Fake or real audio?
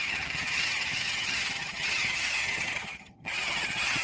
fake